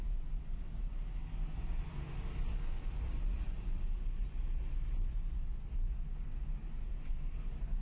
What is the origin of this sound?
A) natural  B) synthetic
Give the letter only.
A